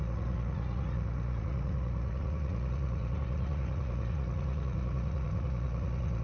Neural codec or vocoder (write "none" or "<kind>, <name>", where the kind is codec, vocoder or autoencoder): vocoder, Vocos